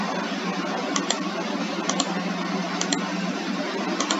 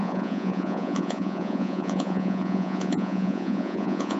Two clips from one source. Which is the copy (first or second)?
second